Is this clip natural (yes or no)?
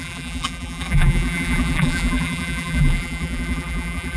no